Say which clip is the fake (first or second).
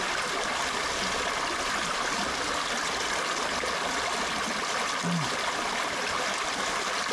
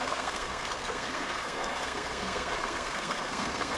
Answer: second